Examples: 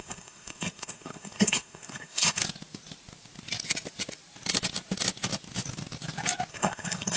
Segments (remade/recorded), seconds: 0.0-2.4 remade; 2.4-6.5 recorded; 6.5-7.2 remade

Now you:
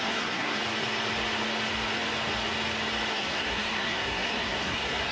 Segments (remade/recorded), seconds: 0.0-0.6 remade; 0.6-3.1 recorded; 3.1-5.1 remade

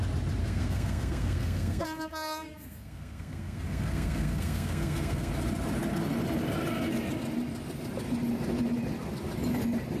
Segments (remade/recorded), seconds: 0.0-0.4 recorded; 0.4-5.3 remade; 5.3-10.0 recorded

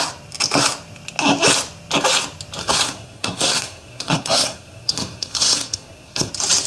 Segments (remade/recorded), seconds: 0.0-2.6 recorded; 2.6-6.3 remade; 6.3-6.7 recorded

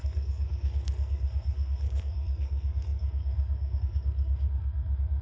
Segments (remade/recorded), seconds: 0.0-5.2 remade

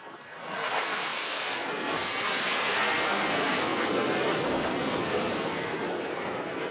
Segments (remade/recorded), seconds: 0.0-6.7 remade